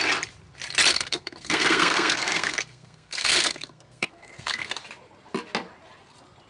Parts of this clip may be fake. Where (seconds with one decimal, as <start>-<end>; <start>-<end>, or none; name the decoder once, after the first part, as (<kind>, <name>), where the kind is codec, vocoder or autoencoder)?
0.9-4.8 (codec, SNAC)